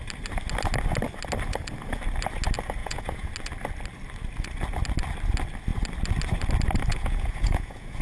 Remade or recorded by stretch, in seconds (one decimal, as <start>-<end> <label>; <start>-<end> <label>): 0.0-2.8 recorded; 2.8-3.3 remade; 3.3-6.9 recorded; 6.9-8.0 remade